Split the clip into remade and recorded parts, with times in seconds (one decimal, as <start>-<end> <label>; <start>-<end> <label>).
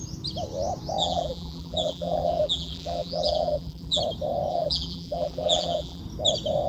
0.0-1.0 recorded; 1.0-4.0 remade; 4.0-4.5 recorded; 4.5-6.0 remade; 6.0-6.7 recorded